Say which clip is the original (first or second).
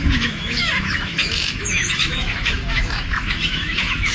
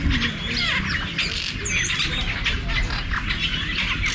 second